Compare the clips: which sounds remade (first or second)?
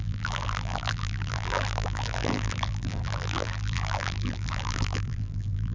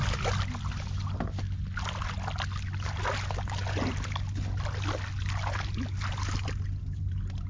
first